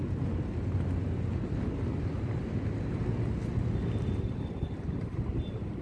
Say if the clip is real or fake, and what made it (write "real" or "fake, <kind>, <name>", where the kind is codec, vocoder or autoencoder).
real